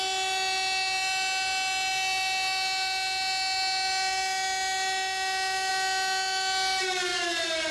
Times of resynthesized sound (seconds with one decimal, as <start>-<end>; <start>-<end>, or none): none

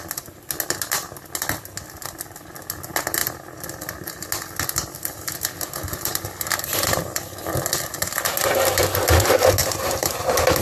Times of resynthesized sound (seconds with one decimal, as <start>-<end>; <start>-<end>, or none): 9.6-10.2

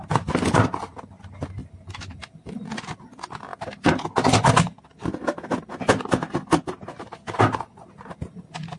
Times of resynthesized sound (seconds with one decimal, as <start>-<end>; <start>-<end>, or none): 1.6-2.9

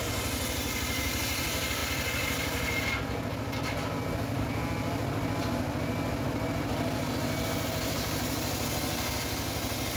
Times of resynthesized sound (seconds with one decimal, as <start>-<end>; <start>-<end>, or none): none